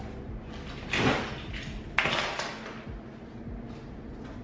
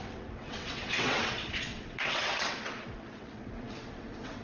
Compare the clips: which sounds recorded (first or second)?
first